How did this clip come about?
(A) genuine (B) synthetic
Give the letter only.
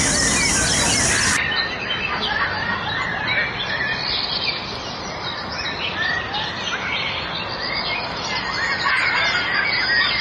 A